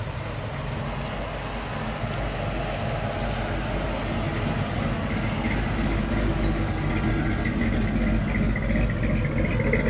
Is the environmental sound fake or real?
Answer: real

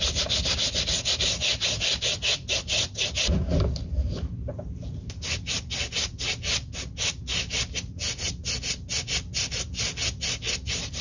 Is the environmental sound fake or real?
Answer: real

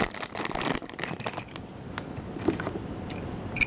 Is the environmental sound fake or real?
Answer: real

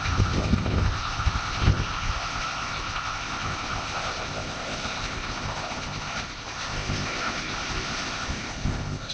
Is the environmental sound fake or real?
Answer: fake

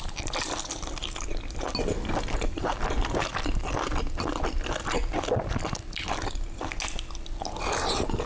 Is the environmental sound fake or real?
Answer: real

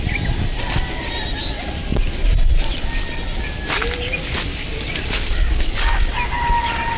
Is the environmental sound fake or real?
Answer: real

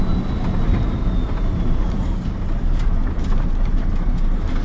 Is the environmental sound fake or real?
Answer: real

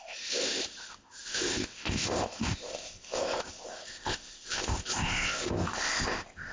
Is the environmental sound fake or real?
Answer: fake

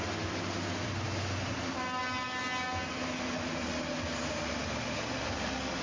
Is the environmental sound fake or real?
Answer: real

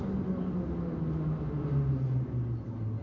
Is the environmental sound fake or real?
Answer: real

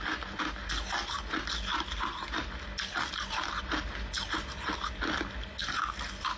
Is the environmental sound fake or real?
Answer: real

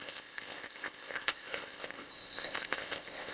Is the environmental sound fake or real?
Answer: fake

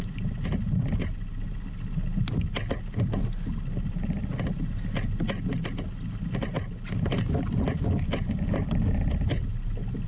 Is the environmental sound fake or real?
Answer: real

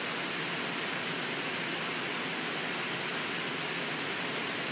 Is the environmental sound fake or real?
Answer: real